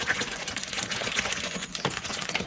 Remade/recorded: remade